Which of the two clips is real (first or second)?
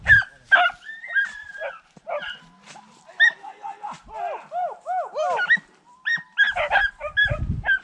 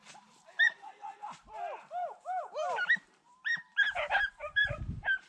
first